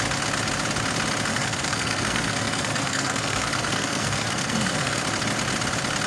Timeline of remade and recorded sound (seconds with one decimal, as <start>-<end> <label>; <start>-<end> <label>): 0.0-1.3 recorded; 1.3-5.0 remade; 5.0-6.1 recorded